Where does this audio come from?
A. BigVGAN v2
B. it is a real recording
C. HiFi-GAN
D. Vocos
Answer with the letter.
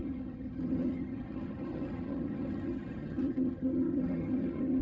C